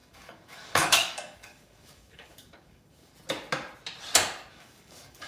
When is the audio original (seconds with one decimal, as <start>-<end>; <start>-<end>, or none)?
3.1-4.5